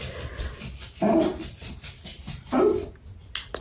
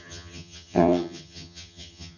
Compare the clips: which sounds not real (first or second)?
second